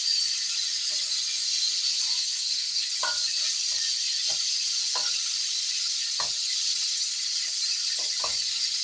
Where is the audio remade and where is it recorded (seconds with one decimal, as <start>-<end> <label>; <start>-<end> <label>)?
0.0-2.1 recorded; 2.1-2.8 remade; 2.8-8.8 recorded